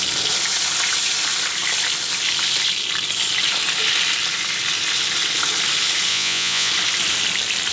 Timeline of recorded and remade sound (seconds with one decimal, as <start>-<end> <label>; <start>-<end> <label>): 0.0-6.1 recorded; 6.1-6.7 remade; 6.7-7.7 recorded